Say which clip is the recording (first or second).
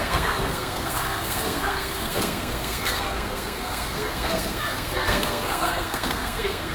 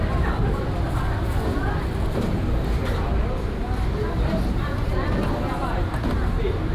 second